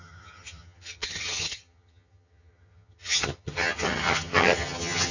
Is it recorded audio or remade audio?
remade